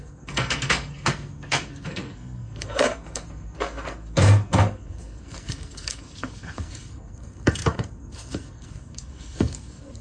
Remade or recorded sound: remade